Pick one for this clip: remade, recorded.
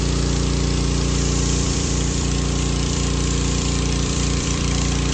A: remade